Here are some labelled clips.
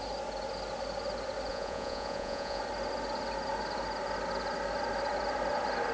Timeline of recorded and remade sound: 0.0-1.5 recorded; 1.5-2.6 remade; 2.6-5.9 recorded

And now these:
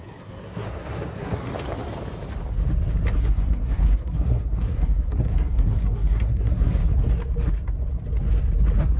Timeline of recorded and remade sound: 0.0-1.5 remade; 1.5-3.2 recorded; 3.2-6.8 remade; 6.8-9.0 recorded

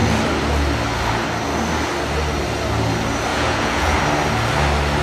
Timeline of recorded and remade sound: 0.0-3.3 recorded; 3.3-4.0 remade; 4.0-5.0 recorded

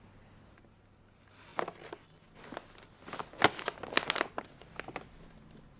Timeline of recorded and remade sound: 0.0-5.8 recorded

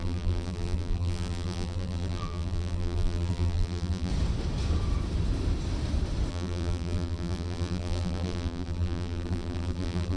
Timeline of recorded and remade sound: 0.0-4.1 remade; 4.1-6.3 recorded; 6.3-10.2 remade

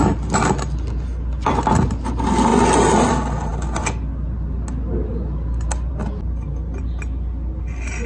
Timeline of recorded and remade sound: 0.0-8.1 recorded

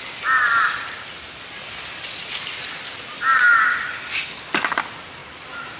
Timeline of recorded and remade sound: 0.0-5.8 recorded